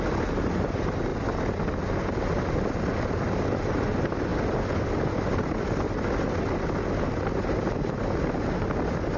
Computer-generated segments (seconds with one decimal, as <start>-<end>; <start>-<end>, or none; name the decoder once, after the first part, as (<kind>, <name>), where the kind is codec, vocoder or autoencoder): none